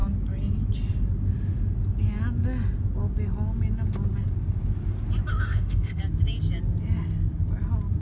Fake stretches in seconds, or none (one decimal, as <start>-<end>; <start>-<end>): 5.3-6.0